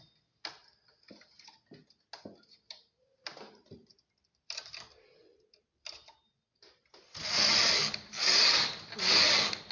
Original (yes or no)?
yes